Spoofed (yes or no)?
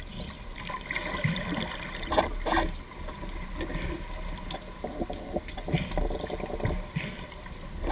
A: no